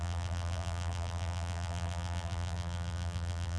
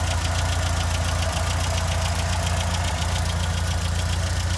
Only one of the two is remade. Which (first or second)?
first